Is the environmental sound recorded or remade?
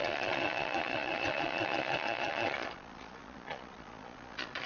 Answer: remade